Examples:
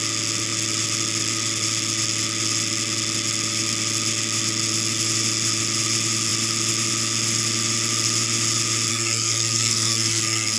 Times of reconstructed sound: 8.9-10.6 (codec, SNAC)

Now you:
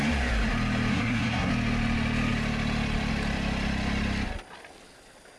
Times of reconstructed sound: 0.9-1.5 (codec, SNAC)

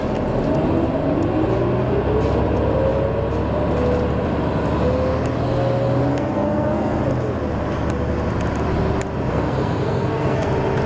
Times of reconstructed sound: 6.1-7.0 (codec, SNAC); 9.3-10.5

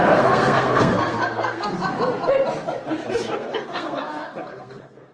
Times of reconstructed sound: 0.0-1.7 (codec, SNAC); 3.3-5.1

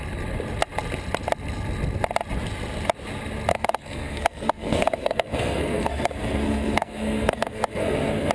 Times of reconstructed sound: 3.5-8.3 (codec, SNAC)